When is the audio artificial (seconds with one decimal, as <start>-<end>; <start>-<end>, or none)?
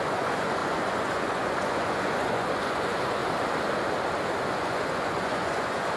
0.0-3.2; 4.5-6.0